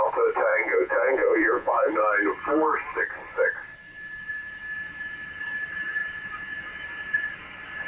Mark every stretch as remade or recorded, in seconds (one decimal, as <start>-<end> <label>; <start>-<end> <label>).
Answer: 0.0-0.5 recorded; 0.5-1.9 remade; 1.9-7.9 recorded